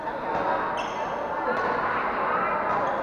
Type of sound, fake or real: real